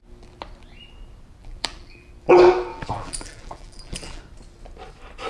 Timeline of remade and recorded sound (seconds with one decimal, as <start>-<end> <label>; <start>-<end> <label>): 0.0-1.4 recorded; 1.4-2.1 remade; 2.1-2.7 recorded; 2.7-4.2 remade; 4.2-5.3 recorded